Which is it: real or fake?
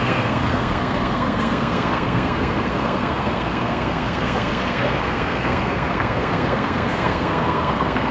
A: fake